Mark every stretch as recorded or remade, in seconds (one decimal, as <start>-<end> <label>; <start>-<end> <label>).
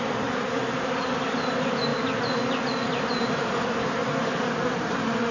0.0-5.3 recorded